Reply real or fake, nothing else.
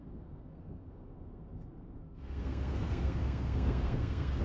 fake